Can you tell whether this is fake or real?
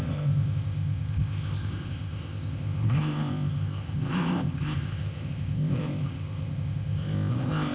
fake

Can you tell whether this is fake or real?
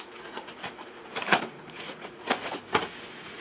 fake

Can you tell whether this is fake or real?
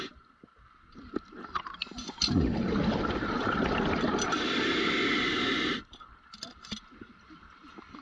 real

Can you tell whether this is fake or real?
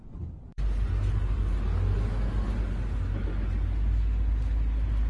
real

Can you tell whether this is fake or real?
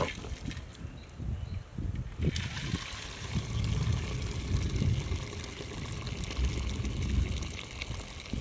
real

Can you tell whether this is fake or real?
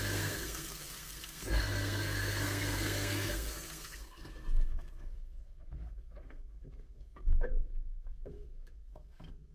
fake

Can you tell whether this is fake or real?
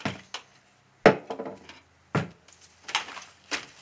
real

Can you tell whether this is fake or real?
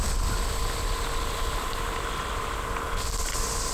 real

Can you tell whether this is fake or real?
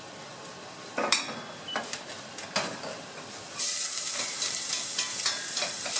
fake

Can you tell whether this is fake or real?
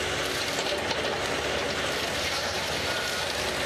real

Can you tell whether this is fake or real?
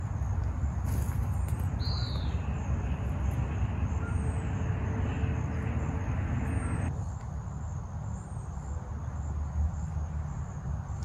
real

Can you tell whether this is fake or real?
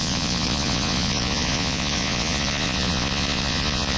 fake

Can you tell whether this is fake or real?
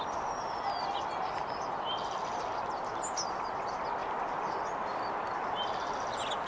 real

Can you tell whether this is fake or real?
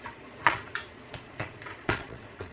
fake